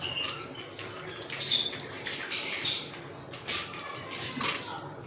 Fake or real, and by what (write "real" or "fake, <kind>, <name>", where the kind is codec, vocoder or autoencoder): real